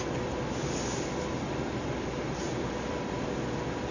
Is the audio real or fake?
real